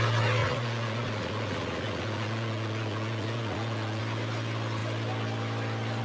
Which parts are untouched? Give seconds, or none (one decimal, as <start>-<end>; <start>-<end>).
0.0-0.4; 4.0-6.0